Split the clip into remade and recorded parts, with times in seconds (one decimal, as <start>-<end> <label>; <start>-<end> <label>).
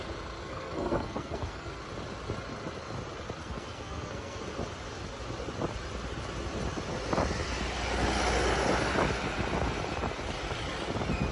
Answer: 0.0-0.4 recorded; 0.4-1.8 remade; 1.8-3.4 recorded; 3.4-4.4 remade; 4.4-11.3 recorded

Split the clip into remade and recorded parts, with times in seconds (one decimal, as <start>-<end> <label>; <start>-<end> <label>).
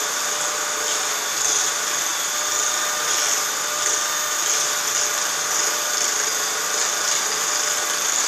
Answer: 0.0-8.3 recorded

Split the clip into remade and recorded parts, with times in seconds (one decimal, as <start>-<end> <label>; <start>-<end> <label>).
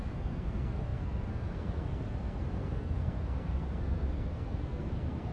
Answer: 0.0-5.3 remade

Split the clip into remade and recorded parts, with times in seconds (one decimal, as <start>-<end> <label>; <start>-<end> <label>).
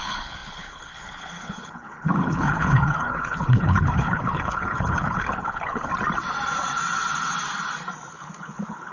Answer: 0.0-5.9 remade; 5.9-8.1 recorded; 8.1-8.9 remade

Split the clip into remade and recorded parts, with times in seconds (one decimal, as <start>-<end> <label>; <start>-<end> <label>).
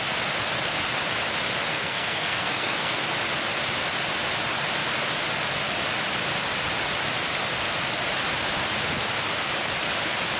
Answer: 0.0-1.7 recorded; 1.7-3.0 remade; 3.0-10.4 recorded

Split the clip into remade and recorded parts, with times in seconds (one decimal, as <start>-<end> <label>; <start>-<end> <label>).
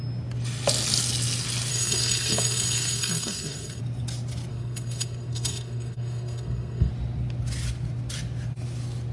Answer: 0.0-1.7 recorded; 1.7-3.8 remade; 3.8-4.5 recorded; 4.5-6.9 remade; 6.9-9.1 recorded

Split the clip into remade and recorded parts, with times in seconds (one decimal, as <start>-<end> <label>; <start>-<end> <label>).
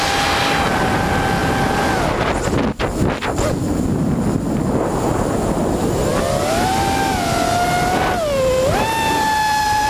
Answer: 0.0-6.1 recorded; 6.1-6.7 remade; 6.7-9.9 recorded